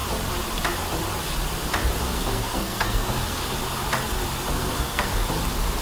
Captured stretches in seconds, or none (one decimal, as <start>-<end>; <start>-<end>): 0.0-2.0; 3.4-4.5; 5.1-5.8